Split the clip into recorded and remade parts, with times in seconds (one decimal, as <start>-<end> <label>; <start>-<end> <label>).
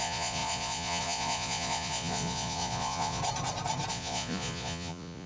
0.0-3.2 remade; 3.2-3.9 recorded; 3.9-5.3 remade